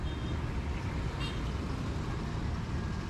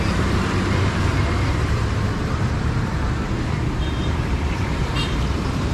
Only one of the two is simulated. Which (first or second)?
second